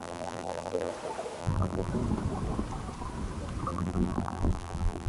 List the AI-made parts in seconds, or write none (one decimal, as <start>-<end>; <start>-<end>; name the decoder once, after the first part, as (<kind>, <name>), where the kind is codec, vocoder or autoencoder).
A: 0.0-0.9 (vocoder, BigVGAN v2); 1.4-1.9; 3.7-5.1